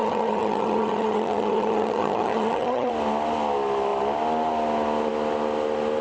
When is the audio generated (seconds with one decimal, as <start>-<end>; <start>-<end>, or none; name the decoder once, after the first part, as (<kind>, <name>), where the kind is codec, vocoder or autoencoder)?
0.0-2.9 (vocoder, HiFi-GAN)